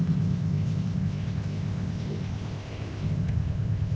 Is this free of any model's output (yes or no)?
no